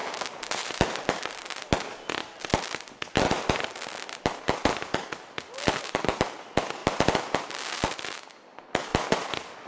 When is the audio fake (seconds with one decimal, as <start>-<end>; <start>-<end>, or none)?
0.0-1.6